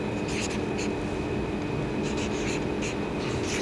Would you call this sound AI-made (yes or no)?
no